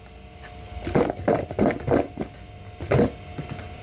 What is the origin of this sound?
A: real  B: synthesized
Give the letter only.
A